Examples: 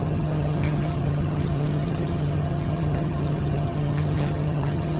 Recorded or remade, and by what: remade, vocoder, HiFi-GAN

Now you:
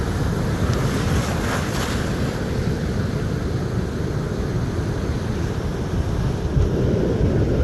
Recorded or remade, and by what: recorded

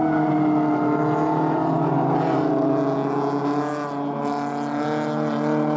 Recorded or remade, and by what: recorded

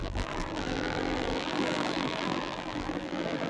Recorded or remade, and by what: remade, vocoder, BigVGAN v2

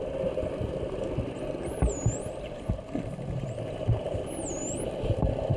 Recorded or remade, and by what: recorded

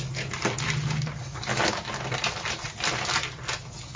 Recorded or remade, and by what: recorded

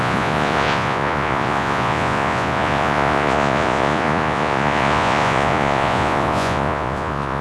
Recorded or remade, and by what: remade, vocoder, Vocos